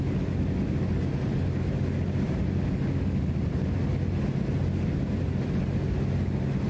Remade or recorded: recorded